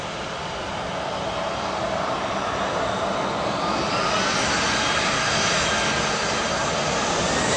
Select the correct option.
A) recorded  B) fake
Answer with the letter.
A